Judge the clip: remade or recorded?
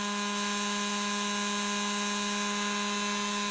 recorded